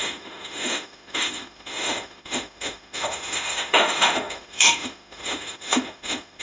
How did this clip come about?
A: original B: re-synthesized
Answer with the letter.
B